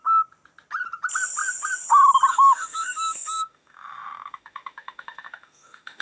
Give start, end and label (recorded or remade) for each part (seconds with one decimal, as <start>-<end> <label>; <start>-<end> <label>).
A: 0.0-2.3 recorded; 2.3-6.0 remade